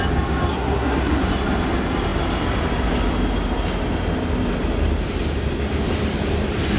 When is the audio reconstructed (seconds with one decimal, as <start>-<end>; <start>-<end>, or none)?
0.5-1.2